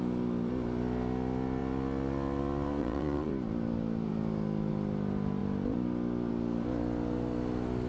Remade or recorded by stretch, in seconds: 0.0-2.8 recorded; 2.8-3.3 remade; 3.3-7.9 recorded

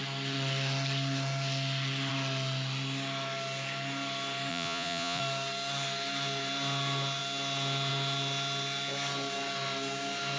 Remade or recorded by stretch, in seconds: 0.0-4.5 recorded; 4.5-5.2 remade; 5.2-10.4 recorded

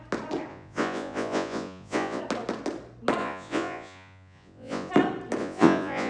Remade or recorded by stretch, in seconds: 0.0-0.5 recorded; 0.5-2.2 remade; 2.2-3.2 recorded; 3.2-4.9 remade; 4.9-5.4 recorded; 5.4-6.1 remade

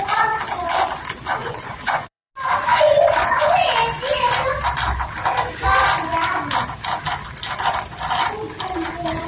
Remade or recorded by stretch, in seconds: 0.0-1.4 recorded; 1.4-2.3 remade; 2.3-2.7 recorded; 2.7-3.5 remade; 3.5-9.3 recorded

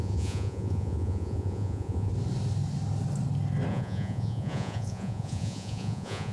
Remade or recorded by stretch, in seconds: 0.0-2.1 remade; 2.1-3.7 recorded; 3.7-6.3 remade

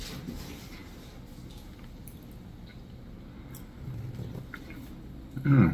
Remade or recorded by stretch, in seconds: 0.0-5.7 recorded

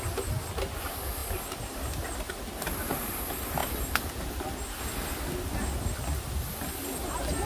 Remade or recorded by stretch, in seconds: 0.0-7.5 recorded

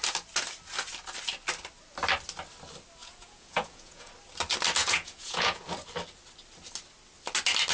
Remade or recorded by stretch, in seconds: 0.0-3.0 recorded; 3.0-4.1 remade; 4.1-4.8 recorded; 4.8-5.6 remade; 5.6-7.7 recorded